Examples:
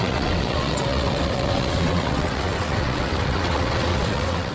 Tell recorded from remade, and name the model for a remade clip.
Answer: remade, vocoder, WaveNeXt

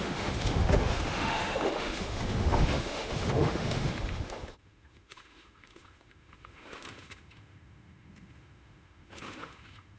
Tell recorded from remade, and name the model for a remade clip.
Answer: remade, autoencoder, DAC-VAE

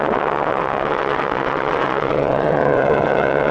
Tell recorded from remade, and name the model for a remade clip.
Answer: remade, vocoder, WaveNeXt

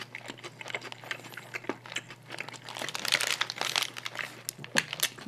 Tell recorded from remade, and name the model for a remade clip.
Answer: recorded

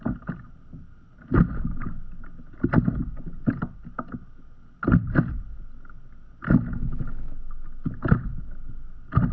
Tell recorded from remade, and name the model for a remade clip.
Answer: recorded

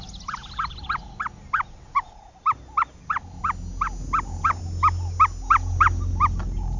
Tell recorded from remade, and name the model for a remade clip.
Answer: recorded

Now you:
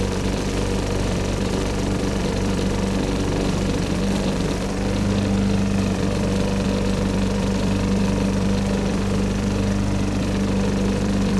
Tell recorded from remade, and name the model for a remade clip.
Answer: remade, vocoder, BigVGAN v2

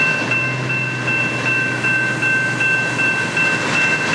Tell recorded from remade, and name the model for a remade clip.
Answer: recorded